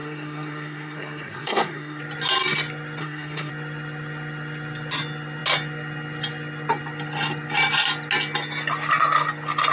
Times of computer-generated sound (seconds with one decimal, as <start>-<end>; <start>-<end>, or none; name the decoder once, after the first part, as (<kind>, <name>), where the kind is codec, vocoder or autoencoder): 0.0-2.0 (codec, SNAC); 3.0-3.5